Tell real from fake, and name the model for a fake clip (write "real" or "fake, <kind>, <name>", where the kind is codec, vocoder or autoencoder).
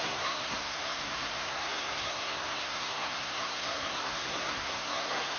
fake, codec, SNAC